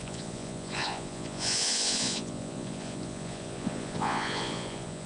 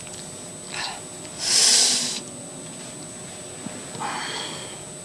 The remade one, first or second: first